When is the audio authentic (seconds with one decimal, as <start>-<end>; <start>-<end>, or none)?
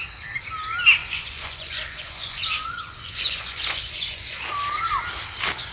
0.0-1.0; 4.4-5.7